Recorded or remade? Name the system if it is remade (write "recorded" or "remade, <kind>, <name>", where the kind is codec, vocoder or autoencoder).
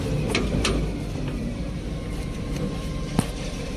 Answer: remade, vocoder, BigVGAN v2